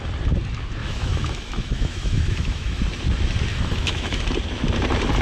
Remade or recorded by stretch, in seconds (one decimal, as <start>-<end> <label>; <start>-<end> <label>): 0.0-0.8 recorded; 0.8-2.8 remade; 2.8-3.5 recorded; 3.5-4.2 remade; 4.2-5.2 recorded